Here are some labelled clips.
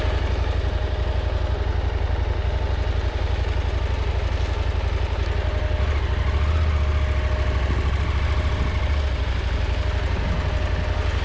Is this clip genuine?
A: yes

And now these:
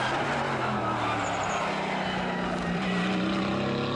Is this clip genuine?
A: yes